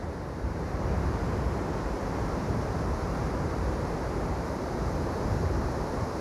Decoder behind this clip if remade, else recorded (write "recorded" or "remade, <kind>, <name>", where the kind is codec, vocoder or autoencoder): remade, vocoder, BigVGAN v2